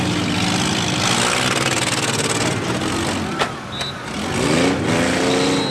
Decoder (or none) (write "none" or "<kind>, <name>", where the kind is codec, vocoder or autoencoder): none